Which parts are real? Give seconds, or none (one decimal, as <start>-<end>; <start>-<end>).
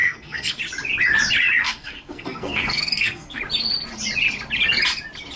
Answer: 0.6-1.6; 3.4-5.4